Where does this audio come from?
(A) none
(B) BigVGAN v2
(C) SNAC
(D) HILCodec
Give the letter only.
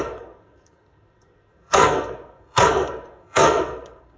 C